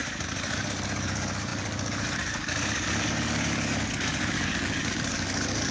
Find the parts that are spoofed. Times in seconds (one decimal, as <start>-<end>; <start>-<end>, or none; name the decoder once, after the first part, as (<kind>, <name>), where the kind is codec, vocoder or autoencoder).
0.0-5.7 (codec, DAC)